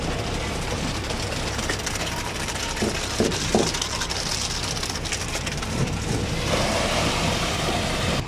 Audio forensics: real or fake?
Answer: fake